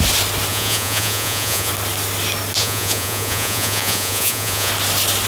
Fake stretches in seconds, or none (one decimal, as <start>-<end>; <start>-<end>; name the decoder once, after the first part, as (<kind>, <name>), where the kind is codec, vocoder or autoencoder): 0.5-1.7 (vocoder, Vocos); 2.6-4.7